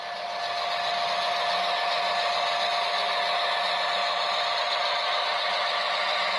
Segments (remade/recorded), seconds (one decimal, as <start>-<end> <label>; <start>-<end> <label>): 0.0-6.4 recorded